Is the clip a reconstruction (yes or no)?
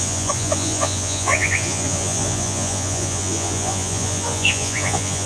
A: yes